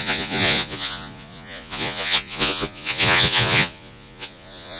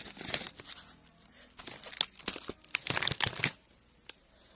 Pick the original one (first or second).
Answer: second